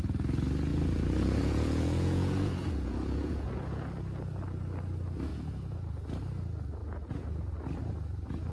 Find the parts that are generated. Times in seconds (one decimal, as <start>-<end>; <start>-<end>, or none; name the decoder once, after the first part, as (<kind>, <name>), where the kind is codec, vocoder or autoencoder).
0.7-3.9 (vocoder, Vocos); 5.3-5.9; 6.8-7.6